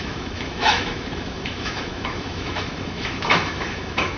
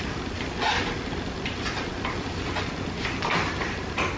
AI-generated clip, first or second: first